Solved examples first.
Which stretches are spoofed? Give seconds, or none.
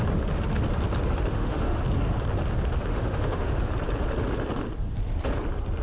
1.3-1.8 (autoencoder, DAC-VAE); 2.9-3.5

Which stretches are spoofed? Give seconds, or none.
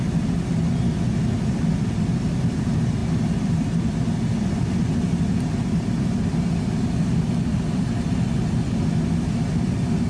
none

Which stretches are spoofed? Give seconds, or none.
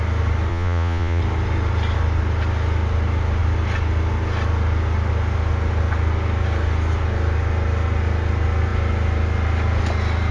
0.5-1.2 (vocoder, Vocos)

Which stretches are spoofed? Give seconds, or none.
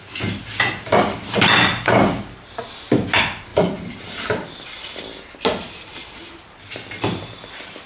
none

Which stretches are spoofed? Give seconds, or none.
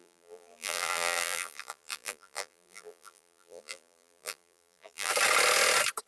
0.0-5.1 (vocoder, BigVGAN v2)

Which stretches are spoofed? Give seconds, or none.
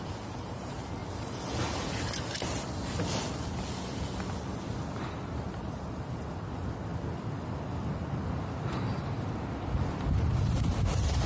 none